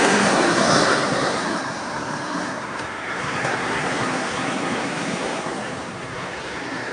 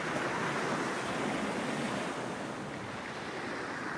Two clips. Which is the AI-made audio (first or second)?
first